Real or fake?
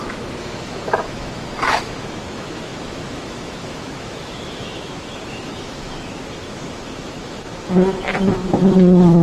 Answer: fake